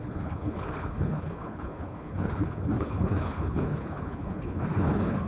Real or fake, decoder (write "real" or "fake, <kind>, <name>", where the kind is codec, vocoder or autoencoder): fake, codec, HILCodec